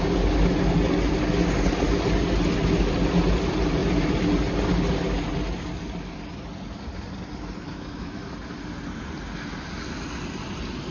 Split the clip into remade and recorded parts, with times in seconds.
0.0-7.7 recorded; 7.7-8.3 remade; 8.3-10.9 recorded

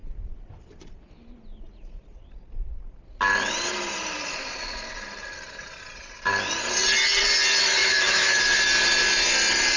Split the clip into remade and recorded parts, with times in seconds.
0.0-7.8 recorded; 7.8-8.4 remade; 8.4-9.8 recorded